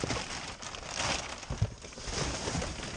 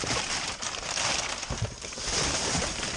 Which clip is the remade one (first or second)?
second